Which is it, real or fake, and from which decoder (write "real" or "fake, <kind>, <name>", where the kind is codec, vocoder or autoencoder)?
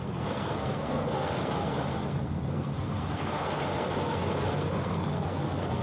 fake, codec, SNAC